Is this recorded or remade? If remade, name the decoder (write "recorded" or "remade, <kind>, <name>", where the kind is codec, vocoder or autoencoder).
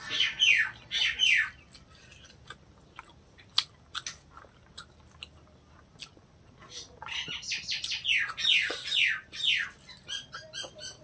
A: recorded